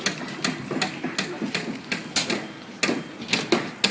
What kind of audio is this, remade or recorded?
recorded